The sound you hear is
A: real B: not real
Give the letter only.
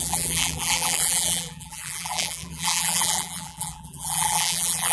B